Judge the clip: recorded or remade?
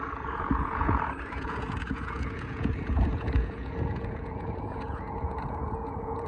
remade